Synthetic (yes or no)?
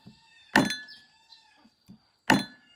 no